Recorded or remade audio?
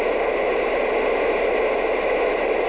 recorded